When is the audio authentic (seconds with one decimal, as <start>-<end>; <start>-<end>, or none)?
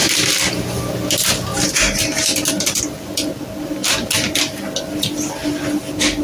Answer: 0.0-6.2